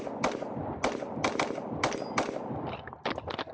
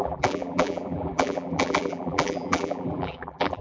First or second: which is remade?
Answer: second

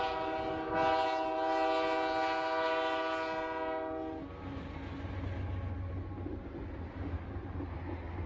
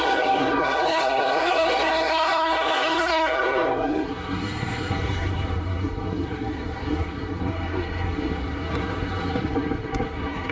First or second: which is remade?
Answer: second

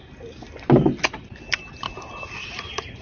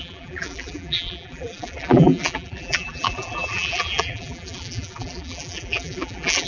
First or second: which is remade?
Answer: second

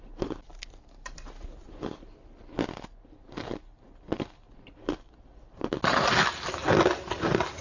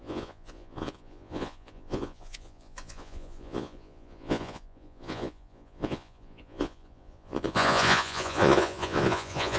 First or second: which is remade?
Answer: second